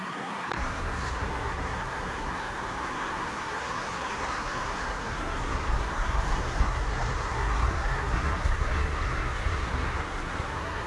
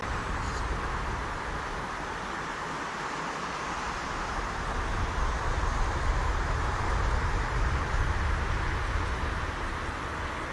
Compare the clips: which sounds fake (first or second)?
first